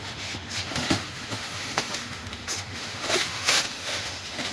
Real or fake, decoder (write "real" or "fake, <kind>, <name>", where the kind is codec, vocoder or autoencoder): fake, autoencoder, DAC-VAE